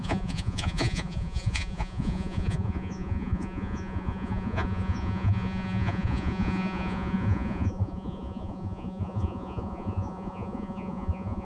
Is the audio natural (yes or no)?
no